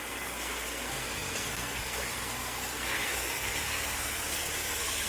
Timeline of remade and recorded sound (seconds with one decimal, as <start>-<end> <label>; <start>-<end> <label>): 0.0-5.1 remade